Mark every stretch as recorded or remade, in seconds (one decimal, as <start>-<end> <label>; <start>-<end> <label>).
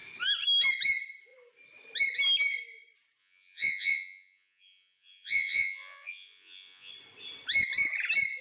0.0-3.2 recorded; 3.2-6.9 remade; 6.9-8.4 recorded